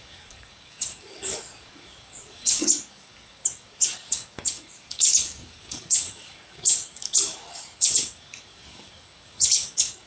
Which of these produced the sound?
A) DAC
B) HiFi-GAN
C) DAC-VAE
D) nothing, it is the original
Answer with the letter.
A